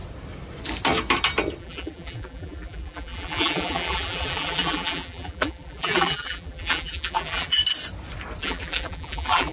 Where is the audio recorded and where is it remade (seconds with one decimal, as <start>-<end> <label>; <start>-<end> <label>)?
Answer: 0.0-1.6 recorded; 1.6-7.6 remade; 7.6-8.4 recorded; 8.4-9.5 remade